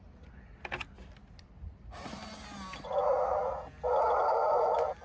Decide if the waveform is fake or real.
real